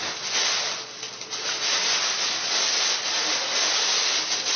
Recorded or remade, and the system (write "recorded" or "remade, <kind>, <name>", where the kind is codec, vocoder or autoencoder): recorded